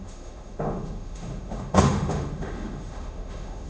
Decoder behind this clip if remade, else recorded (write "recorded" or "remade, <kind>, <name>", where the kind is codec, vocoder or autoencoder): remade, autoencoder, DAC-VAE